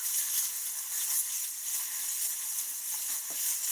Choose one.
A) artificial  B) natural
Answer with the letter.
B